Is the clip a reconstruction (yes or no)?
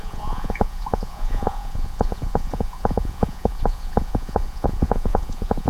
yes